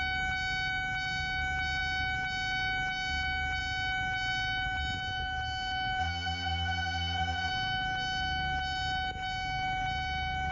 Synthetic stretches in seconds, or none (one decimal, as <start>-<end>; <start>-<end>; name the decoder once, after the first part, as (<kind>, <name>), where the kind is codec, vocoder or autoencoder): 6.0-7.5 (vocoder, Vocos)